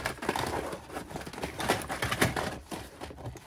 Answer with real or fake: real